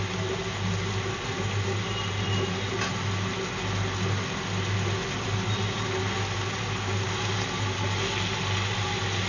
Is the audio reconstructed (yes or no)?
no